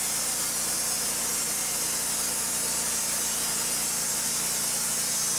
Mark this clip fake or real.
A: real